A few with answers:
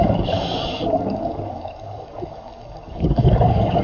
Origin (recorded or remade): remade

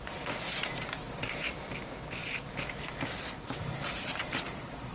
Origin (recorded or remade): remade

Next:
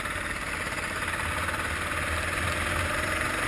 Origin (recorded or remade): recorded